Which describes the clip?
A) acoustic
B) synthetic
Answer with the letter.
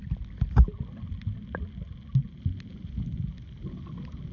A